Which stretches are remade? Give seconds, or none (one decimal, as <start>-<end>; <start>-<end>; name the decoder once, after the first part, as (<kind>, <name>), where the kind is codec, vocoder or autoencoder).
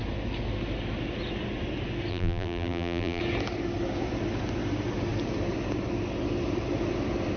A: 2.1-3.2 (vocoder, BigVGAN v2)